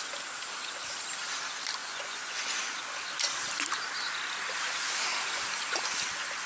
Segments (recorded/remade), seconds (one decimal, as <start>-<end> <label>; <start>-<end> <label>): 0.0-1.8 recorded; 1.8-2.6 remade; 2.6-6.5 recorded